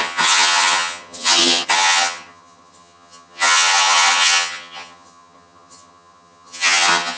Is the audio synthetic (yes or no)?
yes